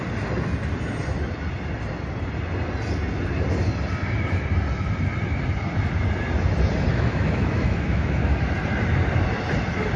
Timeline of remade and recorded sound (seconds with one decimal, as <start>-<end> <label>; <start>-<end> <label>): 0.0-6.9 recorded; 6.9-8.5 remade; 8.5-10.0 recorded